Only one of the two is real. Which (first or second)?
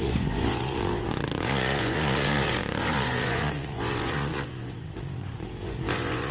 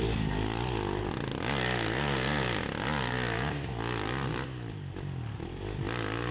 second